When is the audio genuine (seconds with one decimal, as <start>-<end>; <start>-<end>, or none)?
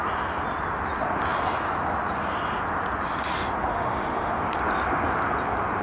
0.0-3.7; 4.3-5.8